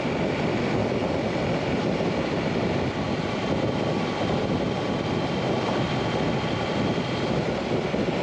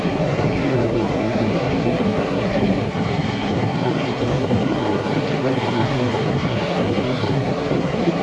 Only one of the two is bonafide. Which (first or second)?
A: first